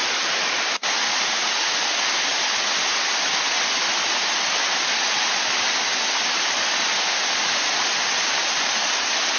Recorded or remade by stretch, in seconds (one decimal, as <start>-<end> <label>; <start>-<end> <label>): 0.0-0.7 remade; 0.7-7.7 recorded; 7.7-8.4 remade; 8.4-9.4 recorded